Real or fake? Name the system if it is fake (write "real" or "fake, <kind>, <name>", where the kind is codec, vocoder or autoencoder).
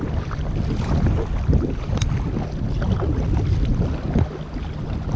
real